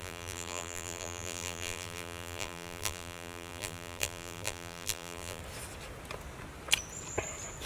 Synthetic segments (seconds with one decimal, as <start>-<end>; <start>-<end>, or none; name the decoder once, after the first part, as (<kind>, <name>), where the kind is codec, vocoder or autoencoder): 0.0-5.4 (vocoder, BigVGAN v2)